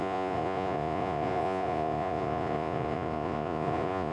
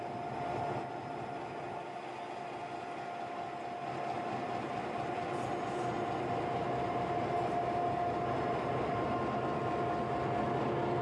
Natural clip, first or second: second